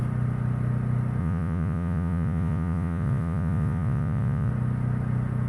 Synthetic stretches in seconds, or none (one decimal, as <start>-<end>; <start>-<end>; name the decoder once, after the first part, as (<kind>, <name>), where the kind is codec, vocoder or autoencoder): 1.2-4.5 (vocoder, Vocos)